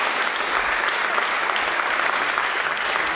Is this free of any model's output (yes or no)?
yes